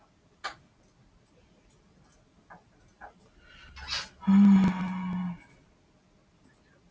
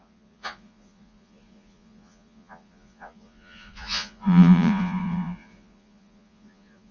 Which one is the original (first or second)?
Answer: first